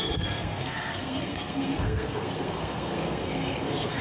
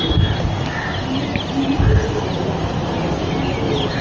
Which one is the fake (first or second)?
first